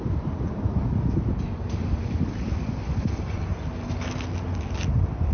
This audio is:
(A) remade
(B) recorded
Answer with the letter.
B